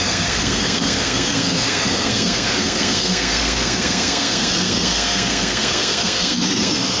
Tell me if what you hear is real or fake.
fake